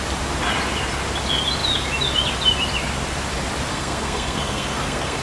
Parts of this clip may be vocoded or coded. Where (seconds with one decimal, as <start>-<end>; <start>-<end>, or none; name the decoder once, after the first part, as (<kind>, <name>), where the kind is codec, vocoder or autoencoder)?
3.7-5.2 (codec, SNAC)